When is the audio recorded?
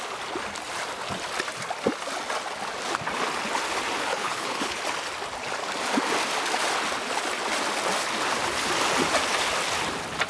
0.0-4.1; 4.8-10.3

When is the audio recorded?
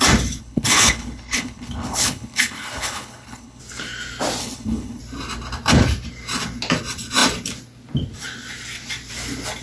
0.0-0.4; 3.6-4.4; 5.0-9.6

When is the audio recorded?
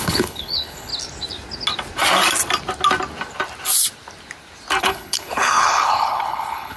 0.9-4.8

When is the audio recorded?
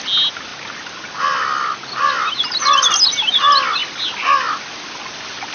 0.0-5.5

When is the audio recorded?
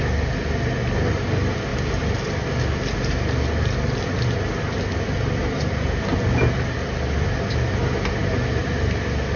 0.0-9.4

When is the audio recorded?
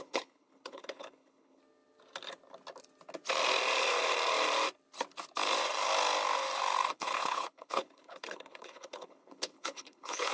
1.6-6.9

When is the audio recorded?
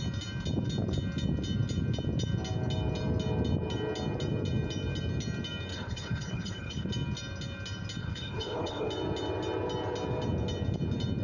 0.0-5.7; 6.9-8.0; 8.9-11.2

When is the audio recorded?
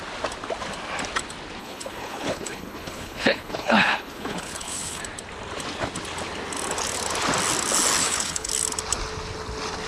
0.0-1.6; 5.0-8.0; 8.5-9.9